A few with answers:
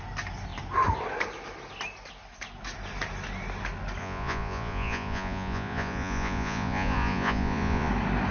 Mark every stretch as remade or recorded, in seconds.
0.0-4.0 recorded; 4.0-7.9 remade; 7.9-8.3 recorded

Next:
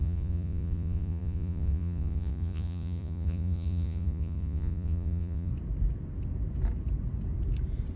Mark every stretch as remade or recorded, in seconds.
0.0-5.5 remade; 5.5-8.0 recorded

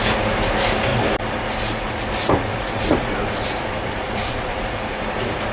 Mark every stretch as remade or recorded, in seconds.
0.0-2.5 recorded; 2.5-5.0 remade; 5.0-5.5 recorded

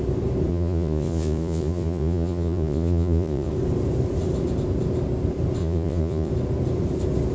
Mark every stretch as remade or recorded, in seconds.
0.0-0.5 recorded; 0.5-3.5 remade; 3.5-5.6 recorded; 5.6-6.3 remade; 6.3-7.3 recorded

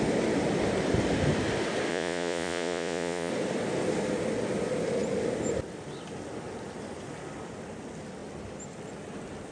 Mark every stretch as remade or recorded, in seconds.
0.0-1.9 recorded; 1.9-3.3 remade; 3.3-9.5 recorded

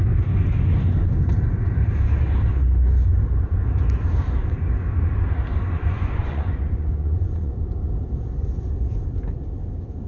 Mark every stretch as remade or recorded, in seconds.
0.0-5.8 recorded; 5.8-7.5 remade; 7.5-10.1 recorded